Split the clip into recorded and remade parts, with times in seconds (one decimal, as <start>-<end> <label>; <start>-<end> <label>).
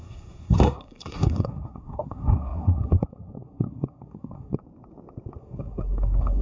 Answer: 0.0-4.6 remade; 4.6-5.4 recorded; 5.4-6.4 remade